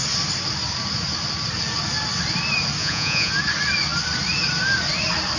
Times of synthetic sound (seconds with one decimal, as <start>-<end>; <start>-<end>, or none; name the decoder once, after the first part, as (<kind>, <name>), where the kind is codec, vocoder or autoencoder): 2.8-3.3 (vocoder, Vocos)